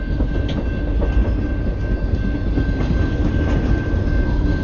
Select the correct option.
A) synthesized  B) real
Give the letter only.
B